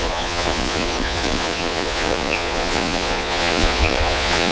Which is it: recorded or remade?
remade